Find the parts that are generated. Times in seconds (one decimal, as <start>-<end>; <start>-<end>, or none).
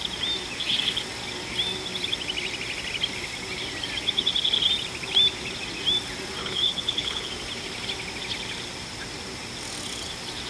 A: 6.4-7.3